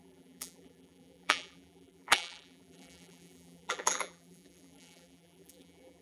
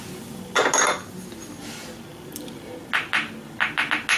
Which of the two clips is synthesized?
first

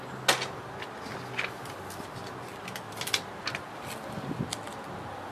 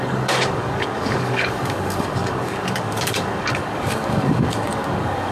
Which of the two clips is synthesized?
second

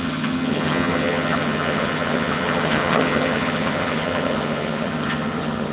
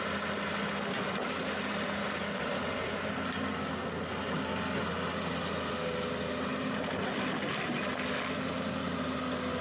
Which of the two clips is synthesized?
first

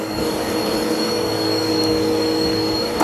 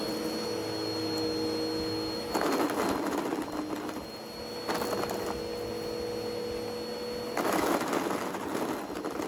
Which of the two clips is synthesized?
first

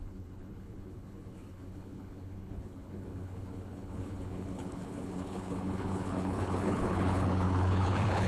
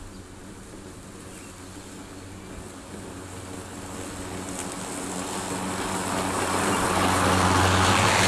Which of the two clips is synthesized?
first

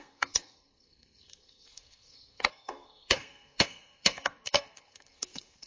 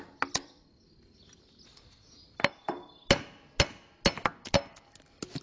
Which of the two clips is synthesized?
first